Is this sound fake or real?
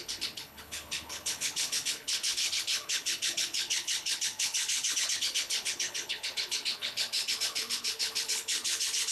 fake